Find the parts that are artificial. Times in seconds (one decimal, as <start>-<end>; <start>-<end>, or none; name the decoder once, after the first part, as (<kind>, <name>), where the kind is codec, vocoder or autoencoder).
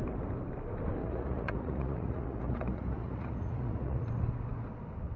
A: 1.0-4.1 (vocoder, Vocos)